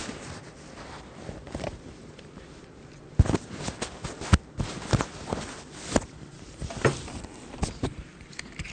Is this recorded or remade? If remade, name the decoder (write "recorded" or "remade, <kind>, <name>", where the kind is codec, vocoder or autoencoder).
recorded